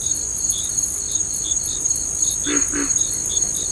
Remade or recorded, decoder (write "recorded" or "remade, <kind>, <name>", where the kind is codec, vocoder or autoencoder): recorded